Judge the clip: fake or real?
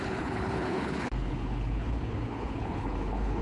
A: fake